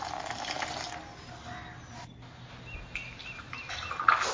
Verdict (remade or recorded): recorded